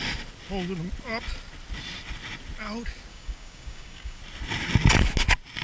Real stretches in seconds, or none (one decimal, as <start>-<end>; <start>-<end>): 0.0-3.1; 4.2-5.6